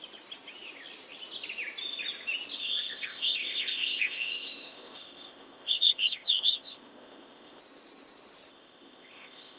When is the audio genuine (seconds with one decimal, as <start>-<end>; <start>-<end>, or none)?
0.0-2.6; 7.6-8.5